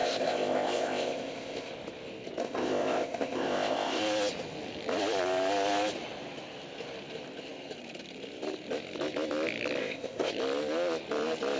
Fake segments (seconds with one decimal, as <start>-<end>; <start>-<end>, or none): 0.0-1.7; 2.4-4.0; 9.8-10.3